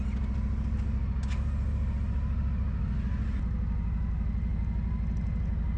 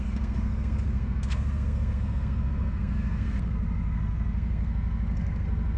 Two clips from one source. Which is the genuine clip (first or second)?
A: first